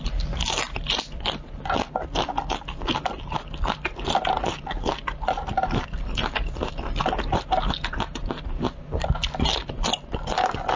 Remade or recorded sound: recorded